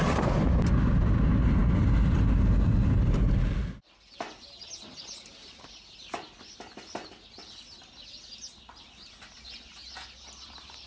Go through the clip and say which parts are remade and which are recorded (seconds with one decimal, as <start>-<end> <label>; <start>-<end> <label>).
0.0-10.9 recorded